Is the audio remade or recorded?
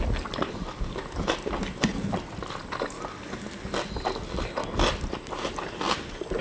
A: recorded